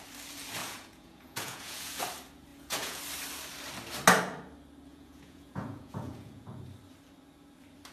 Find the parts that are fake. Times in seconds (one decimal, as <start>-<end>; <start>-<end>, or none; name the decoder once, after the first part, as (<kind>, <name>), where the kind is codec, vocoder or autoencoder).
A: 0.6-2.0 (vocoder, Vocos); 2.5-3.0; 4.9-6.6

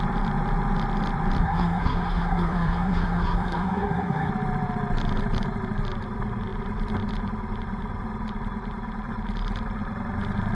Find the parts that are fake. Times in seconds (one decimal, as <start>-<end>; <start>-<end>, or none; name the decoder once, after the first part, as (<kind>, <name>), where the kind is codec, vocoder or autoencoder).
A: 1.4-4.3 (codec, SNAC)

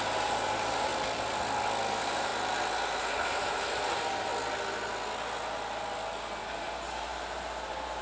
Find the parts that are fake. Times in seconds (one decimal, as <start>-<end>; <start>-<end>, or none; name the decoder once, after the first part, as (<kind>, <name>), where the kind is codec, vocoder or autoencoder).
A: 0.0-0.9 (vocoder, BigVGAN v2); 1.9-2.3; 3.0-4.3; 6.3-8.0

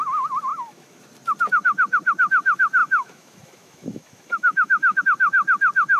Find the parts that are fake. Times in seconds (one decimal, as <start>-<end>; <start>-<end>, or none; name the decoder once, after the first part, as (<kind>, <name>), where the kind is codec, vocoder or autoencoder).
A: 0.5-1.0 (autoencoder, DAC-VAE); 2.8-5.0